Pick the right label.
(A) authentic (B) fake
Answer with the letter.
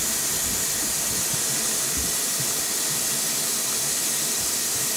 A